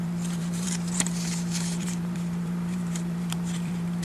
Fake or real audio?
fake